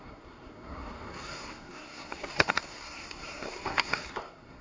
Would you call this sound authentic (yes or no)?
no